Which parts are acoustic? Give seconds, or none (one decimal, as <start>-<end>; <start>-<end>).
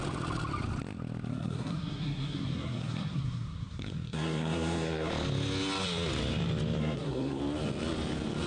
0.0-1.3; 5.1-6.8; 7.4-8.5